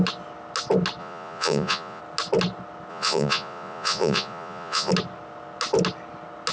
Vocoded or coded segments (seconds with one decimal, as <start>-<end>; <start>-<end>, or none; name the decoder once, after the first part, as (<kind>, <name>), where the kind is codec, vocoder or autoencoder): 1.0-2.0 (vocoder, Vocos); 2.9-4.9